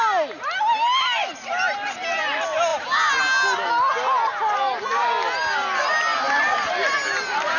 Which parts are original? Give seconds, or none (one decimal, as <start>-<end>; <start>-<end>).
0.0-7.6